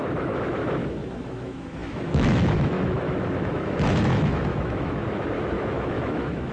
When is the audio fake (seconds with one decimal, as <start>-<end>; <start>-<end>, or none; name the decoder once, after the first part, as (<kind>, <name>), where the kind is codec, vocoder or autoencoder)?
0.0-6.5 (autoencoder, DAC-VAE)